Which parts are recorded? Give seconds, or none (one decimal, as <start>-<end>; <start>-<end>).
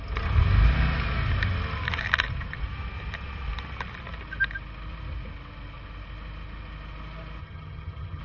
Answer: 0.0-7.4